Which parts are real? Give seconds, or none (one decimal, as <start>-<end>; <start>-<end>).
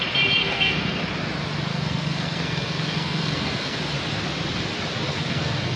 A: 0.0-0.4; 1.0-1.7; 3.8-5.1